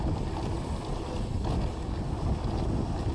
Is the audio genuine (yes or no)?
yes